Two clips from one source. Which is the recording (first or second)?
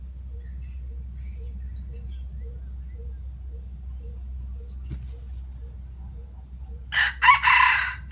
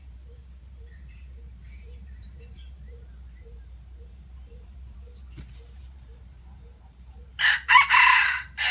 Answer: first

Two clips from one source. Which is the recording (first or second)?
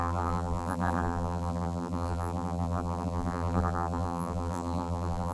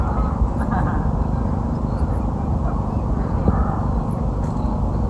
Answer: second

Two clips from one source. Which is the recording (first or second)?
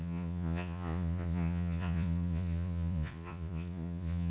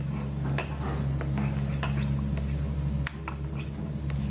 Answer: second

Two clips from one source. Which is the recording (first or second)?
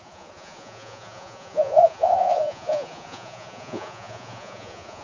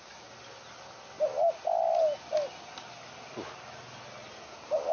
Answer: second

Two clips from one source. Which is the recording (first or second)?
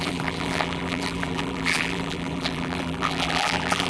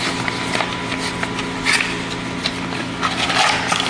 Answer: second